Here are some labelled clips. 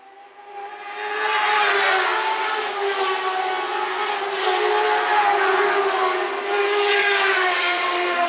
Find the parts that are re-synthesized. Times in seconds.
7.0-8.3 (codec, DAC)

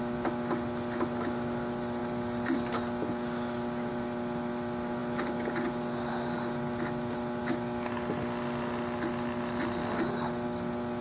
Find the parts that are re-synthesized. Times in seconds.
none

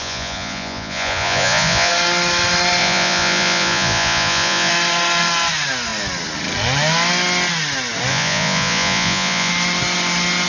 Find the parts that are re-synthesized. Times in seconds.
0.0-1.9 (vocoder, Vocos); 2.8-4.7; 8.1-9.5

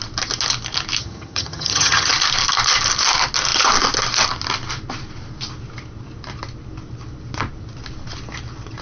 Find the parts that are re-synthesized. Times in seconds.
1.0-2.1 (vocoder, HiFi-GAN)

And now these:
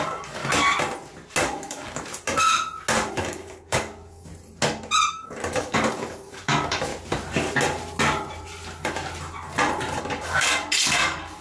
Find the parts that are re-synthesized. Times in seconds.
0.0-0.4 (codec, DAC); 1.4-2.1; 3.1-4.3; 5.1-6.9; 10.0-11.4

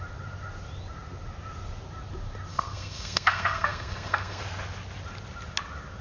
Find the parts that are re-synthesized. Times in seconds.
2.5-4.4 (codec, SNAC)

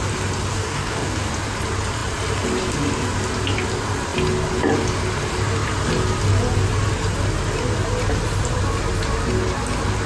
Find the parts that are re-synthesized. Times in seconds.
0.5-1.3 (codec, DAC)